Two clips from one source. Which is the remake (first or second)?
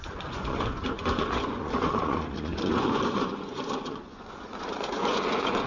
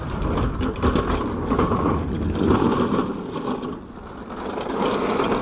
first